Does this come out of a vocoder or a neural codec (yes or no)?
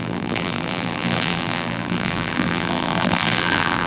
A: yes